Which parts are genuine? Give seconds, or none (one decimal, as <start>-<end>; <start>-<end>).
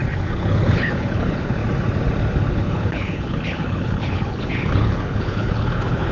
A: 1.6-2.5